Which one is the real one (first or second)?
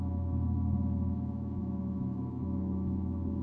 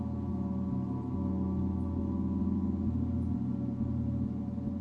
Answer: second